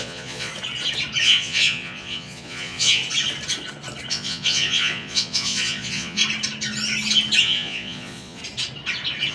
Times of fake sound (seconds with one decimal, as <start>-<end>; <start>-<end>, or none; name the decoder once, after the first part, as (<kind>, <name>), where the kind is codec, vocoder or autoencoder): 0.0-0.5 (vocoder, Vocos); 1.2-3.0; 4.1-6.2; 7.4-8.4